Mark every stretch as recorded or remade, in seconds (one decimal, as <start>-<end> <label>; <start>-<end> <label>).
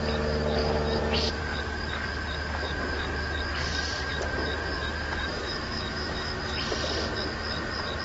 0.0-0.6 recorded; 0.6-1.4 remade; 1.4-4.8 recorded; 4.8-6.3 remade; 6.3-8.0 recorded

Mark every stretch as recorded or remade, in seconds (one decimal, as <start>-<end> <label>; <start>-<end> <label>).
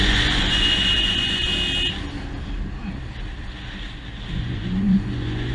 0.0-1.5 remade; 1.5-4.3 recorded; 4.3-5.5 remade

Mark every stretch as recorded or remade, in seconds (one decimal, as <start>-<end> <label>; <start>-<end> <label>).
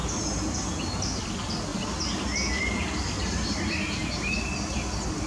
0.0-5.3 recorded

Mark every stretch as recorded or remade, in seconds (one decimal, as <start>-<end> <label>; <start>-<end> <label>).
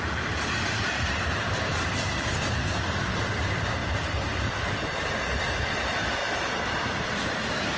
0.0-7.8 recorded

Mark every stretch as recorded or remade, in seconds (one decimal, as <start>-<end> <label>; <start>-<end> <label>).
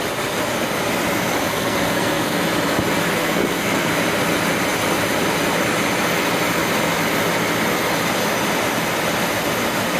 0.0-1.5 recorded; 1.5-2.4 remade; 2.4-3.2 recorded; 3.2-3.9 remade; 3.9-10.0 recorded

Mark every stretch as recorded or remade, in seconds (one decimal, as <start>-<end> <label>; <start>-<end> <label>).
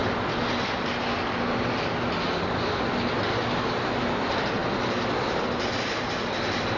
0.0-6.8 recorded